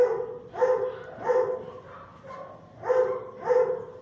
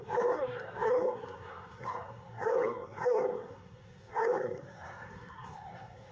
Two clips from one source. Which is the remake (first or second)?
second